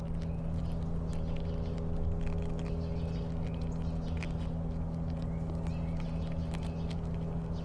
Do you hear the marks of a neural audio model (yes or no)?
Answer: no